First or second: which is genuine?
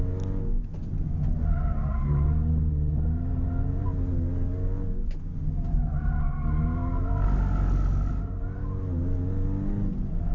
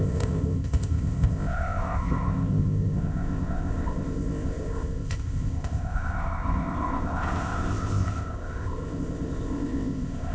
first